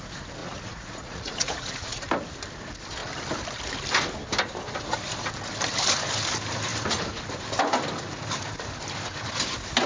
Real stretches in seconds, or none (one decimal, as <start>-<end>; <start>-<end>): 0.0-0.4; 2.0-9.9